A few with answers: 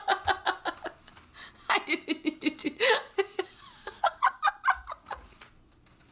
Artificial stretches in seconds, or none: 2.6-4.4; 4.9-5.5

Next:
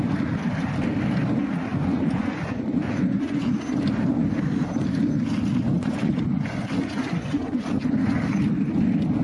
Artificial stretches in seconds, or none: 1.7-3.5; 5.7-8.2

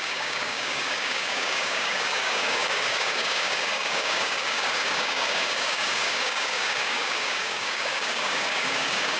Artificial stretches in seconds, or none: 0.0-9.2

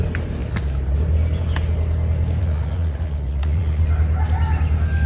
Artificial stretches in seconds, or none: 2.4-3.8

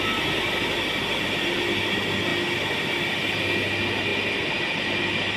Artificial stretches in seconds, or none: none

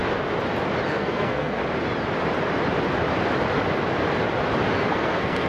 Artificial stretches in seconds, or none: 0.9-1.6; 4.9-5.5

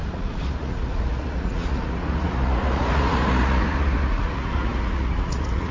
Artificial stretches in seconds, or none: 0.0-5.7

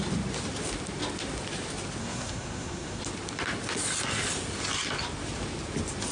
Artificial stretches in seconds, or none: 2.0-3.0